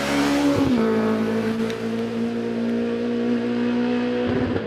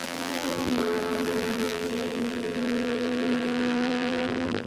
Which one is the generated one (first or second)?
second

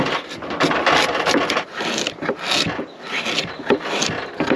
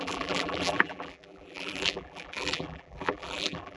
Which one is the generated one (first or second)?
second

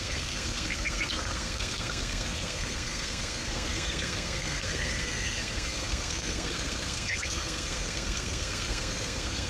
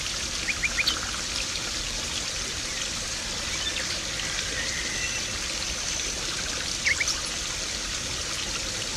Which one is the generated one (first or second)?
first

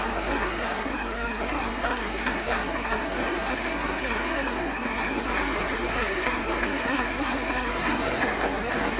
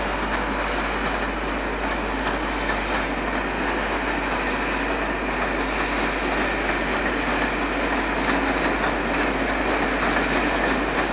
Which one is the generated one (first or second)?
first